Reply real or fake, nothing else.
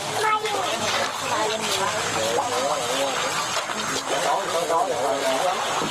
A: real